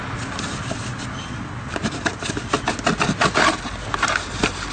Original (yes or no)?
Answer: yes